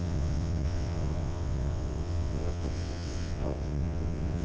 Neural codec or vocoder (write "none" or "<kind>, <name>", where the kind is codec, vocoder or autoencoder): vocoder, WaveNeXt